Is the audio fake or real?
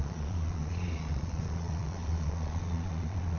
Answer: fake